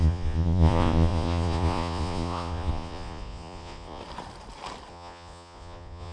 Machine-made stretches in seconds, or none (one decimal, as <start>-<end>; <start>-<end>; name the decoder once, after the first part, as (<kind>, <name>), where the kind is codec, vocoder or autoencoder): 0.0-4.0 (vocoder, Vocos); 4.9-6.1